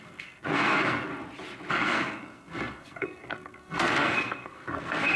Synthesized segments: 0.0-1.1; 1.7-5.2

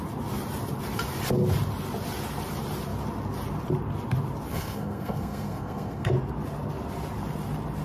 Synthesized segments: 4.5-6.1